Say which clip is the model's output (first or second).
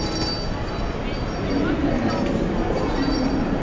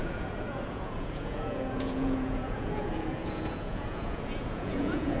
second